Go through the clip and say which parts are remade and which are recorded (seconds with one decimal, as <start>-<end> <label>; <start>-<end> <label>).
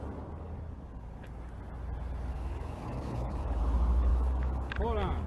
0.0-2.3 recorded; 2.3-3.6 remade; 3.6-4.1 recorded; 4.1-4.7 remade; 4.7-5.3 recorded